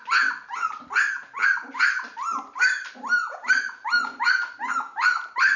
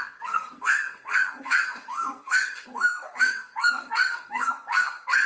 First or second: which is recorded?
first